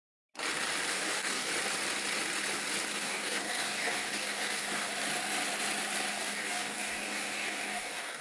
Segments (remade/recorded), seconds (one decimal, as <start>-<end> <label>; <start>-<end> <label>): 0.0-0.9 recorded; 0.9-1.5 remade; 1.5-2.9 recorded; 2.9-4.9 remade; 4.9-6.1 recorded; 6.1-8.2 remade